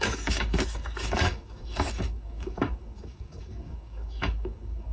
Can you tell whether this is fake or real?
fake